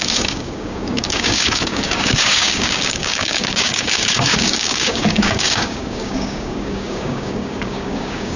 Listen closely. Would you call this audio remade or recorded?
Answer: remade